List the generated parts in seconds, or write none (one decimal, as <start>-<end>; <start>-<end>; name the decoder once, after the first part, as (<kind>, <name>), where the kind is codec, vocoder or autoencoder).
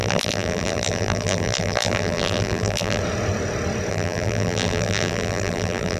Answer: 0.0-3.0 (vocoder, BigVGAN v2); 3.9-6.0